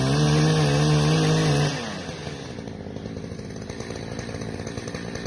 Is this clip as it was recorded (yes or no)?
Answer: yes